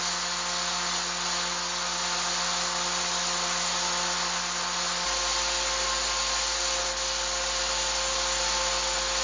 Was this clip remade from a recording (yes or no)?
no